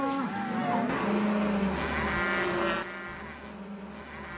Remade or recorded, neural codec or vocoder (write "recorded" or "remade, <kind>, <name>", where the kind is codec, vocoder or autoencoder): recorded